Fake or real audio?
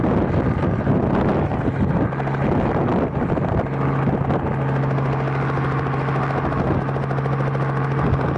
real